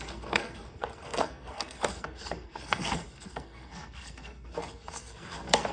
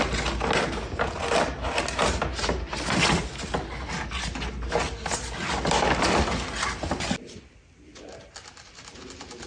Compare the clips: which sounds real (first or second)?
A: second